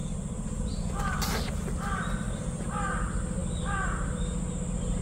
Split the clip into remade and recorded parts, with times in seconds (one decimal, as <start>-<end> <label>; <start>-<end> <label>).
0.0-1.3 remade; 1.3-5.0 recorded